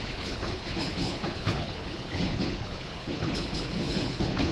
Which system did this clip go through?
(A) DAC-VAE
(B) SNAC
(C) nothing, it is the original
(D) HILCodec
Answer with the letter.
D